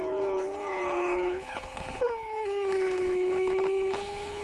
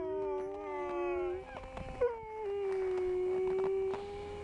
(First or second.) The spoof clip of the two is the first